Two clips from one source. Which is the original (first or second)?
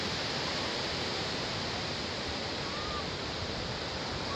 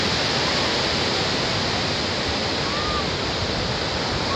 second